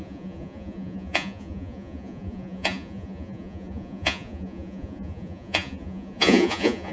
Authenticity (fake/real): fake